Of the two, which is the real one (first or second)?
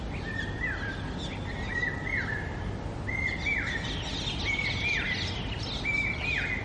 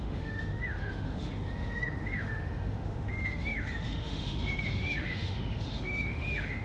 first